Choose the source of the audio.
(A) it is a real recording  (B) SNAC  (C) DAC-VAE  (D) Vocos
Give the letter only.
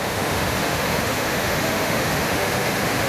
C